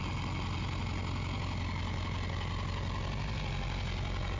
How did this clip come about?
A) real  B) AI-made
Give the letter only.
A